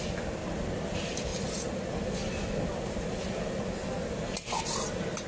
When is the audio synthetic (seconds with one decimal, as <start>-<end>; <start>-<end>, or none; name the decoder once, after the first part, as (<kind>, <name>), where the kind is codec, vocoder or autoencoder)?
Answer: none